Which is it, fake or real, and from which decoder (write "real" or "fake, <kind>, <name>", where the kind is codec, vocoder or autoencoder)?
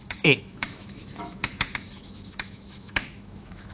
fake, autoencoder, DAC-VAE